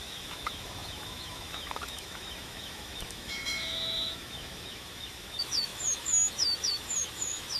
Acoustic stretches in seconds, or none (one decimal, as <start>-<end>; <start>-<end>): none